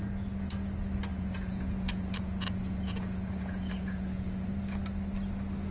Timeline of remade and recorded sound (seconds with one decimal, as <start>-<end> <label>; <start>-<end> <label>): 0.0-1.1 recorded; 1.1-4.5 remade; 4.5-5.7 recorded